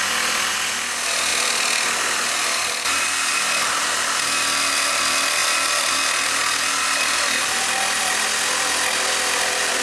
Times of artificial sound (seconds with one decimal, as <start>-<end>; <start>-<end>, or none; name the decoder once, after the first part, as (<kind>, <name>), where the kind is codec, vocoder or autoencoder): none